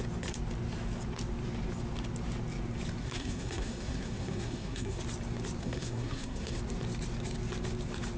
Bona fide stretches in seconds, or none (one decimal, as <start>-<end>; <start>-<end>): 0.0-3.0; 5.0-5.6; 6.6-8.2